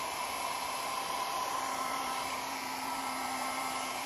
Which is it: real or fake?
fake